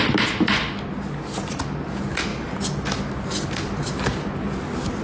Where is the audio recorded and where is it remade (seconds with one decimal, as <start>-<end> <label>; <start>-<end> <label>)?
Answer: 0.0-5.0 recorded